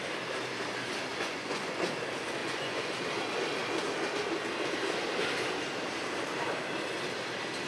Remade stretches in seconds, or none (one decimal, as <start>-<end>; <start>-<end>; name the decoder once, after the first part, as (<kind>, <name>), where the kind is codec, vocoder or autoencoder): 1.1-1.9 (vocoder, Vocos); 2.4-2.9